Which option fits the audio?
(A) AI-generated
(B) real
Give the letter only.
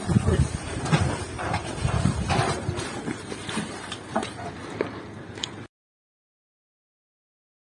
A